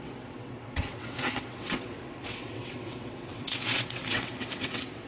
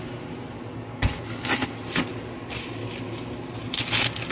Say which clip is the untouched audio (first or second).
second